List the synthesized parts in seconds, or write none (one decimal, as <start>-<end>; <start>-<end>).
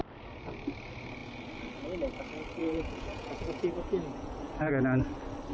2.6-4.7